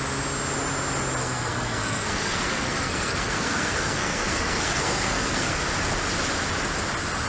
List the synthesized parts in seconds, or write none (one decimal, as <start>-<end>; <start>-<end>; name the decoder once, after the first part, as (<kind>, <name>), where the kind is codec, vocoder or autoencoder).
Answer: 1.2-5.6 (codec, SNAC)